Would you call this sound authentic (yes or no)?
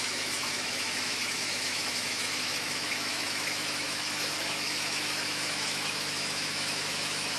no